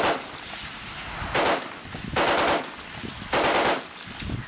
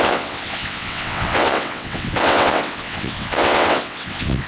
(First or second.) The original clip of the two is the first